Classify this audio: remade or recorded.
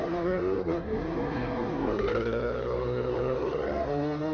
remade